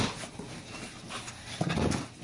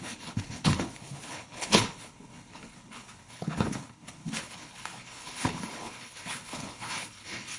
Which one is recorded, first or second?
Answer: first